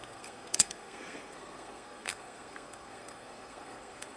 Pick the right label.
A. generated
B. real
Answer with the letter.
A